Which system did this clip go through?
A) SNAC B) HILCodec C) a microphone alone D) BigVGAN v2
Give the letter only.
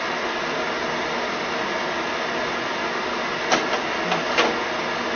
C